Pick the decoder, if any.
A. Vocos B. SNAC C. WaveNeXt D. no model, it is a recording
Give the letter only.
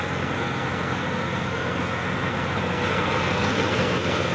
B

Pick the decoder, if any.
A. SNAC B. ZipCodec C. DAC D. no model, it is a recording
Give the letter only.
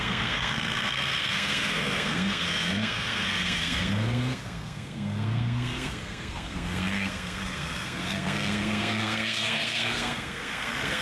A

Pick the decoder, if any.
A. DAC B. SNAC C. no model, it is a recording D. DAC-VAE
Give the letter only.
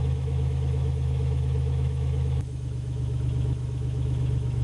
D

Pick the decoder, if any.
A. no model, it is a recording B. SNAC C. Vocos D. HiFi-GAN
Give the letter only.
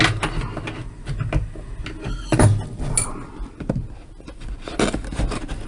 A